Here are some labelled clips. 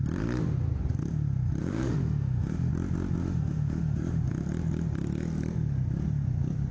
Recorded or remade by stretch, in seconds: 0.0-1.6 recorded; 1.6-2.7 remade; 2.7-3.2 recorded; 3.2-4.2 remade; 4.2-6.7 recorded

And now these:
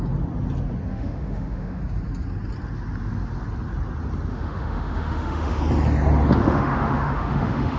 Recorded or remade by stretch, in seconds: 0.0-0.9 recorded; 0.9-1.8 remade; 1.8-4.3 recorded; 4.3-5.6 remade; 5.6-6.4 recorded; 6.4-7.8 remade

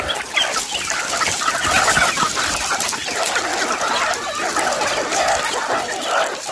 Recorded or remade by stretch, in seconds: 0.0-6.5 recorded

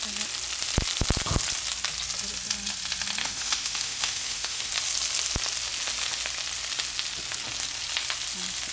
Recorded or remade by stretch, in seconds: 0.0-3.2 recorded; 3.2-4.7 remade; 4.7-8.7 recorded

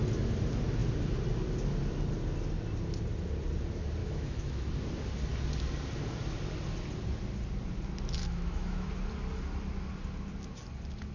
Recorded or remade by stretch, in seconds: 0.0-4.0 recorded; 4.0-4.7 remade; 4.7-8.2 recorded; 8.2-8.9 remade; 8.9-11.1 recorded

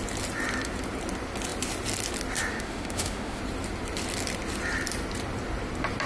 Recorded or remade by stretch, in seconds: 0.0-2.5 recorded; 2.5-3.4 remade; 3.4-6.1 recorded

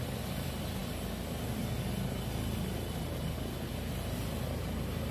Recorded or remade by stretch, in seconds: 0.0-5.1 recorded

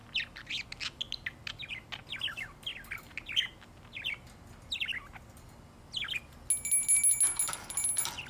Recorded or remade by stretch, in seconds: 0.0-8.3 recorded